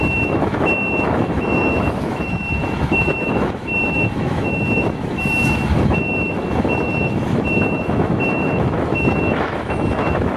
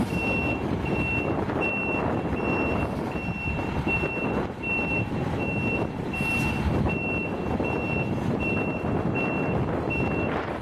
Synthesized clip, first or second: first